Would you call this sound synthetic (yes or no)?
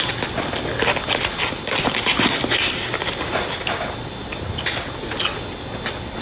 no